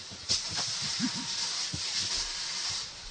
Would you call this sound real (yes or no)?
yes